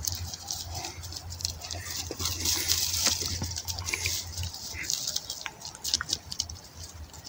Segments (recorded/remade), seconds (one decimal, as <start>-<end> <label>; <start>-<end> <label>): 0.0-7.3 recorded